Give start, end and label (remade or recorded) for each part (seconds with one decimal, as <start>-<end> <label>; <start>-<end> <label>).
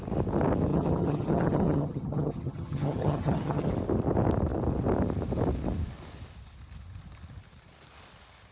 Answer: 0.0-0.7 recorded; 0.7-3.7 remade; 3.7-8.5 recorded